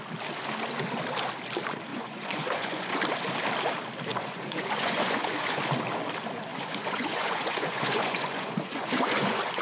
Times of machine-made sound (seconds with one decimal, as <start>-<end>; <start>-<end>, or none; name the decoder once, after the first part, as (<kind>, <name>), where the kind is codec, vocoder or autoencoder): 1.9-3.0 (vocoder, Vocos); 4.1-5.6; 6.5-9.6